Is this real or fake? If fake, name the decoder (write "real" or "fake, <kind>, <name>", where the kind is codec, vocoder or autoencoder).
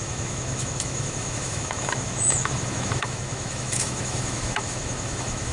fake, autoencoder, DAC-VAE